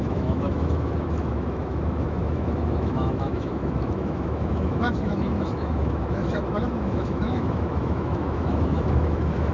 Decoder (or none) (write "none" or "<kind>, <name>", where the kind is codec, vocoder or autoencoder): autoencoder, DAC-VAE